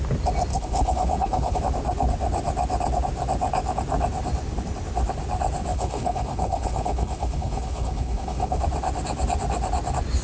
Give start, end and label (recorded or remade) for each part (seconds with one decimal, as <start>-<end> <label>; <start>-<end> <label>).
0.0-0.5 recorded; 0.5-1.6 remade; 1.6-5.7 recorded; 5.7-8.6 remade; 8.6-10.2 recorded